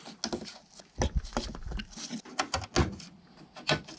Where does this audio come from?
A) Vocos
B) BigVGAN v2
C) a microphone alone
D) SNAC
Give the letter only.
C